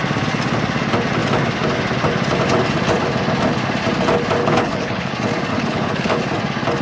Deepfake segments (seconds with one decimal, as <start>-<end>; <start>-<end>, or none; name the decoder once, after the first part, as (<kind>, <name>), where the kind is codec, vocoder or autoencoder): 4.4-5.1 (codec, HILCodec); 5.5-6.2